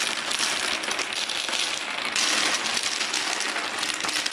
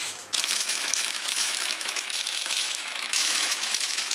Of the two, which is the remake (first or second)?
second